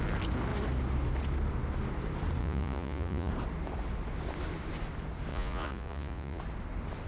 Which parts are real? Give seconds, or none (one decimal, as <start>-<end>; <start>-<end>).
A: 0.0-2.4; 3.3-5.3; 6.4-7.1